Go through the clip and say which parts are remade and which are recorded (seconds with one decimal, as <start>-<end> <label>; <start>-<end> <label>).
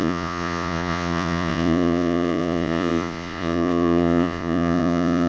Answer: 0.0-5.3 remade